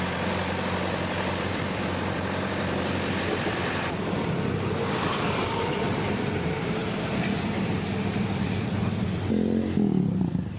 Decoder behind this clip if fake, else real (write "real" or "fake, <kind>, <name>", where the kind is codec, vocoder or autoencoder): fake, vocoder, BigVGAN v2